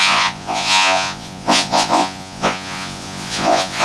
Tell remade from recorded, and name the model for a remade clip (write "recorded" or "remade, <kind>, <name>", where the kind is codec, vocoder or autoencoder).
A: remade, vocoder, Vocos